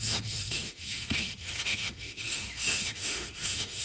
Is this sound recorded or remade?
remade